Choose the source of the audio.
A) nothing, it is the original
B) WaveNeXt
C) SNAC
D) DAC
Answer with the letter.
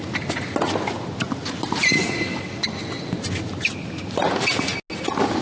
A